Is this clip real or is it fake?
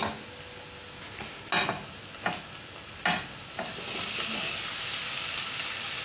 real